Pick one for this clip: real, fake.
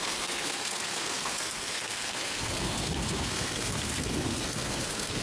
fake